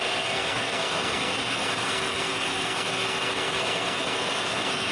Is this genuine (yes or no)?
no